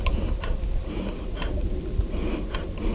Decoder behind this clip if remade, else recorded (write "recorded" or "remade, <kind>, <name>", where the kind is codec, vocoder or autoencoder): recorded